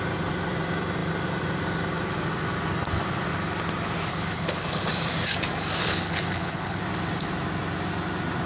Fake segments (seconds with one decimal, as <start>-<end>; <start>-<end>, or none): 4.1-4.9; 5.8-6.8